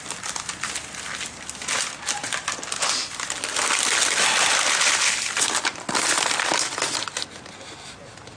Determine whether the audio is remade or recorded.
recorded